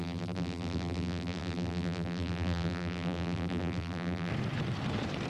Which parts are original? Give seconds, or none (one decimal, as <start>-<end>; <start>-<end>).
4.3-5.3